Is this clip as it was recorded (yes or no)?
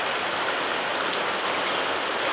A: yes